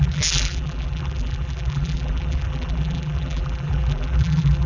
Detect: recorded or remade remade